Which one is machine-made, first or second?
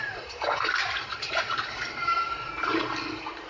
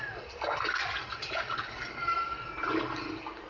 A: first